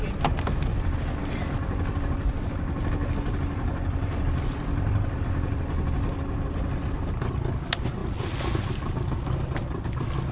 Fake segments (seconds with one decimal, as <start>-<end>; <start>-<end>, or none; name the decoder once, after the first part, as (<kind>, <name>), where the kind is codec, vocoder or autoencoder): none